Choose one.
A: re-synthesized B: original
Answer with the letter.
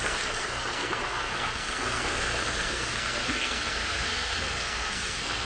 A